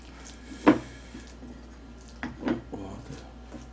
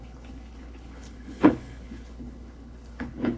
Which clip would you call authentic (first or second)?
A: first